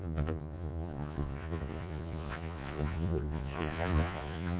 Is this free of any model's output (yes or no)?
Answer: no